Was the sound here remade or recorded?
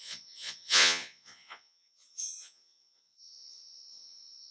remade